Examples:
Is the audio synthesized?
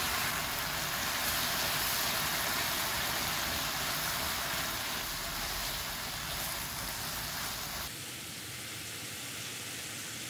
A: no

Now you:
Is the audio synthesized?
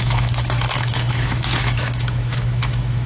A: yes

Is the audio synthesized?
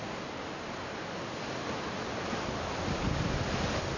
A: no